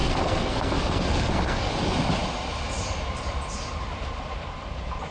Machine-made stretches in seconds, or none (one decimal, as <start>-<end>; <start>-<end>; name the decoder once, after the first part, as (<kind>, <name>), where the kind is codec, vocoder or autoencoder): 0.0-1.7 (codec, SNAC)